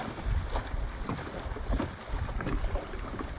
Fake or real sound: real